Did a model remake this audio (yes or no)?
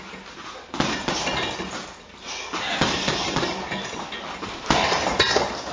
no